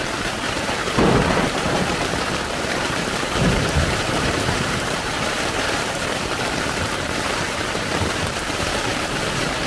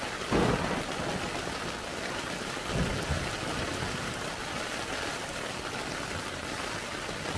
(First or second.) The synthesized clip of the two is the first